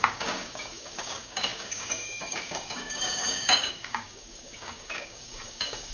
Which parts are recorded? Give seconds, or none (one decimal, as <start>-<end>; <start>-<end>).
none